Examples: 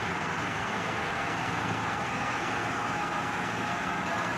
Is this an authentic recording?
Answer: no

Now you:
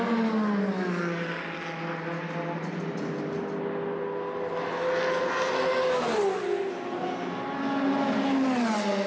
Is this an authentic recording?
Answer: yes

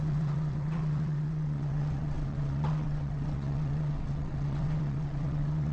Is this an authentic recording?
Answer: no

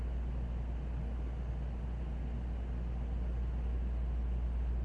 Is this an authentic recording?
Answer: yes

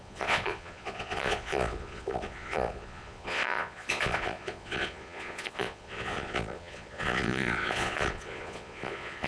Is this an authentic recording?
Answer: no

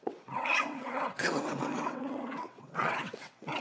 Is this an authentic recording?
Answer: no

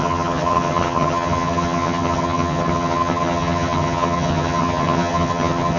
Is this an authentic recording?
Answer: no